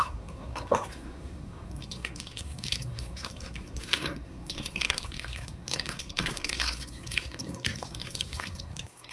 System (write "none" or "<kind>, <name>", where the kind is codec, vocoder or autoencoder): codec, SNAC